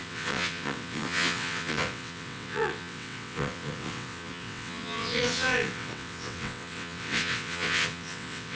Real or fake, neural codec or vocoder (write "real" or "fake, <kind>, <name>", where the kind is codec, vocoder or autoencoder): fake, vocoder, WaveNeXt